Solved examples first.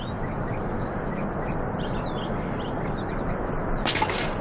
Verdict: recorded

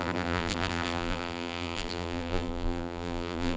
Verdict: remade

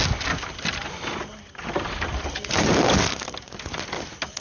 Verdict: recorded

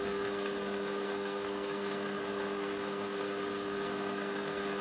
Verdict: remade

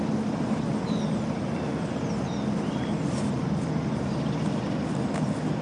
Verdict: recorded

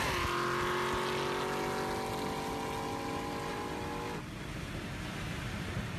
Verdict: recorded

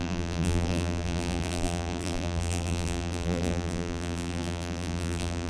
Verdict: remade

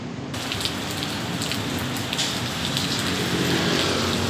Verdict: recorded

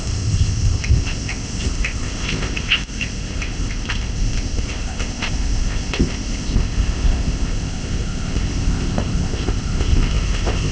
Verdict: remade